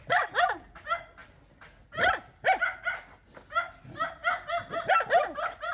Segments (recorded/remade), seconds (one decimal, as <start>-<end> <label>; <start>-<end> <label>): 0.0-5.7 recorded